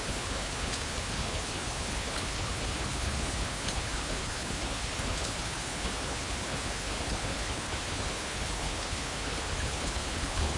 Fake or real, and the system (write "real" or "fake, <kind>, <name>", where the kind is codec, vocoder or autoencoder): fake, codec, HILCodec